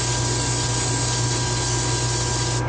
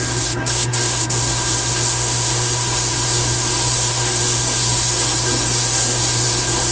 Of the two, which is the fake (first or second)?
second